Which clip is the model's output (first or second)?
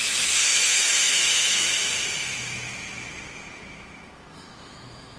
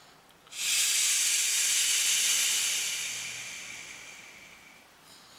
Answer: first